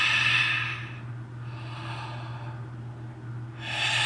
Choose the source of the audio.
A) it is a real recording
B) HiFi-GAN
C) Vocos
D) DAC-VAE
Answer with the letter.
A